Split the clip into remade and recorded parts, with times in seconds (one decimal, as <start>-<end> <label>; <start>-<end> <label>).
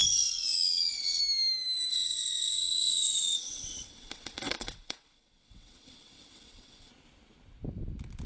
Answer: 0.0-1.2 remade; 1.2-1.9 recorded; 1.9-6.9 remade; 6.9-8.3 recorded